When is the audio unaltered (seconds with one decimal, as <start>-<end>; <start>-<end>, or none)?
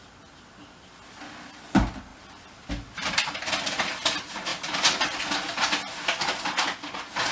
0.0-2.1; 3.5-4.5; 5.2-7.3